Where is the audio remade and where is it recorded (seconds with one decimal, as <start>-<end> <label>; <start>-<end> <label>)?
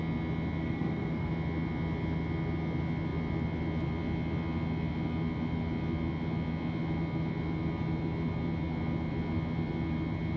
0.0-0.6 recorded; 0.6-1.3 remade; 1.3-10.4 recorded